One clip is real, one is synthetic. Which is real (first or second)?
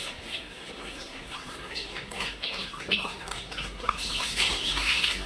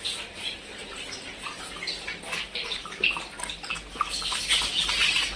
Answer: second